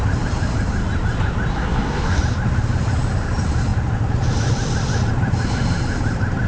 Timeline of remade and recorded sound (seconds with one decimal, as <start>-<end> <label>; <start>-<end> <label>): 0.0-1.5 recorded; 1.5-2.2 remade; 2.2-6.5 recorded